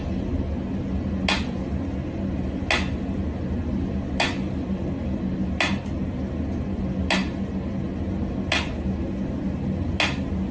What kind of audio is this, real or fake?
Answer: real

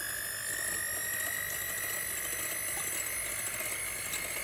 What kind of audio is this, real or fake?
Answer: real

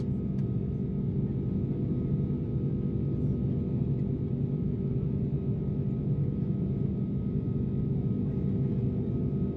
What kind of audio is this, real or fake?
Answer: real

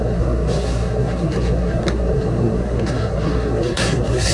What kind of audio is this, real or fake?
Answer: fake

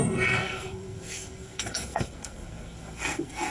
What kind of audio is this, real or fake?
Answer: fake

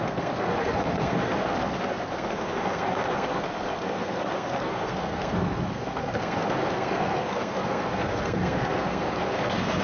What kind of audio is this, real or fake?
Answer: fake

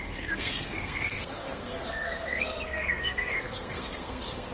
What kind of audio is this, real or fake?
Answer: fake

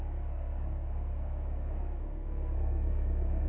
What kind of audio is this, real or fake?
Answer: fake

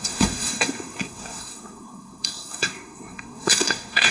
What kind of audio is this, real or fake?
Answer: fake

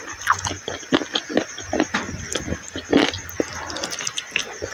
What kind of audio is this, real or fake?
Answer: real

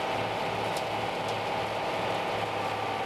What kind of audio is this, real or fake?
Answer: real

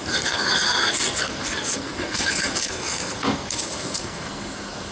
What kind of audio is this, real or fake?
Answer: fake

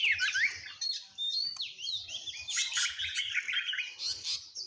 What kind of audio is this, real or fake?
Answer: real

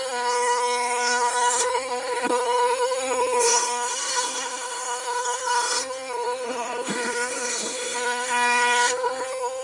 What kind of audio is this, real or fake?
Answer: fake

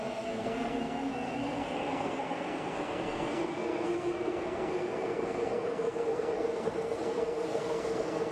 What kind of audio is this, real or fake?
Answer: fake